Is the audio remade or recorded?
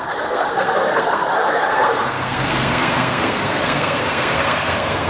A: remade